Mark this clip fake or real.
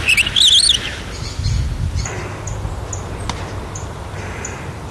real